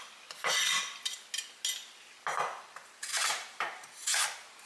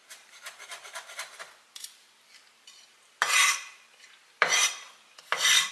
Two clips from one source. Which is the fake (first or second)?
second